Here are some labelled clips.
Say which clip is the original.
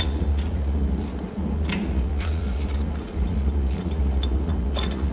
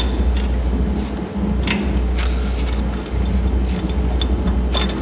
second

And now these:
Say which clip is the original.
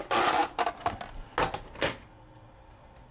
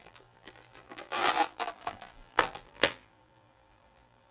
first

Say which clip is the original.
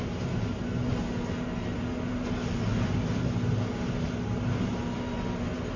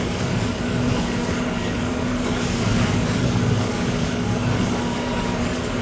first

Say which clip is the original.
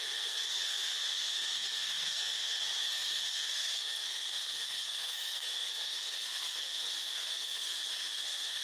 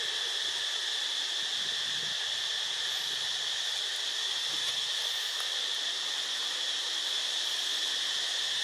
second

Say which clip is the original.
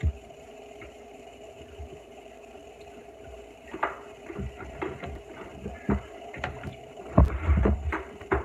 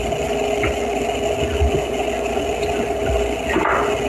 second